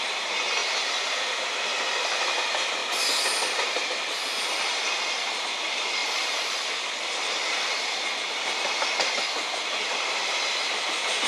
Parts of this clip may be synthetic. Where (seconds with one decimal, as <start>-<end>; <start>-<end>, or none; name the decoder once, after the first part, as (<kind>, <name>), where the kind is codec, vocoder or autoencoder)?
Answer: 6.0-6.7 (vocoder, BigVGAN v2)